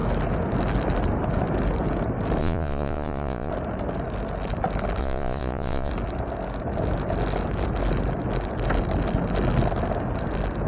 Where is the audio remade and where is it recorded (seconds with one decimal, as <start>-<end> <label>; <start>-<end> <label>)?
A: 0.0-2.4 recorded; 2.4-3.5 remade; 3.5-5.0 recorded; 5.0-5.9 remade; 5.9-10.7 recorded